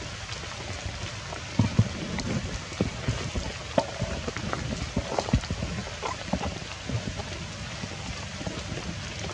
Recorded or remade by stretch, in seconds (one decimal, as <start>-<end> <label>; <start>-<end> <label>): 0.0-9.3 recorded